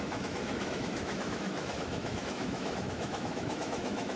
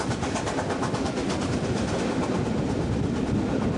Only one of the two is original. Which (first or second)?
second